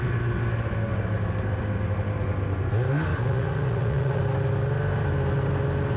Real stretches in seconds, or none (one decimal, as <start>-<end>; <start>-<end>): 0.0-3.1; 4.2-6.0